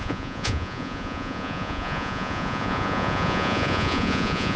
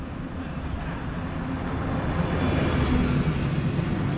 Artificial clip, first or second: first